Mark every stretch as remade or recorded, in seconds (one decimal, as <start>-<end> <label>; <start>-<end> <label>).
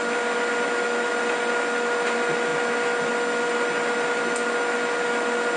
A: 0.0-5.6 recorded